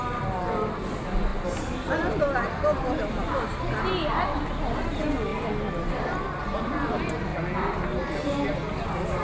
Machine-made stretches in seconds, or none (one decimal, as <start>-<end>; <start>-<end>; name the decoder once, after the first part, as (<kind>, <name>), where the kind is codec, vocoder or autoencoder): 5.3-6.7 (vocoder, BigVGAN v2)